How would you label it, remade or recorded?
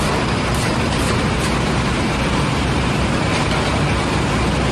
remade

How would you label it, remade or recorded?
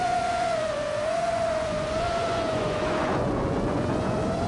remade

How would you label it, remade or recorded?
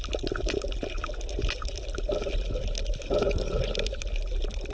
recorded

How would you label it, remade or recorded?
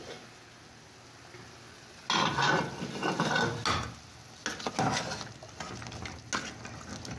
recorded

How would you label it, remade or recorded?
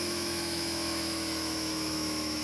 remade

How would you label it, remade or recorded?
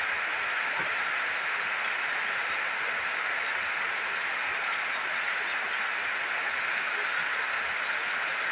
recorded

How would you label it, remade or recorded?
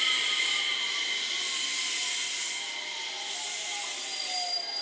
recorded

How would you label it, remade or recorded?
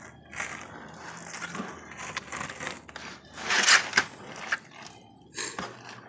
recorded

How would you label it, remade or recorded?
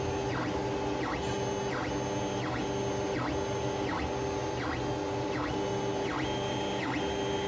recorded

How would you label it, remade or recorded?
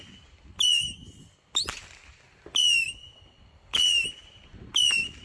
recorded